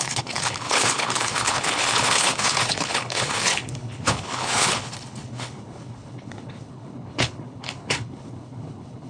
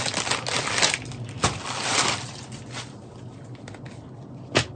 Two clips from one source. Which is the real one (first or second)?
second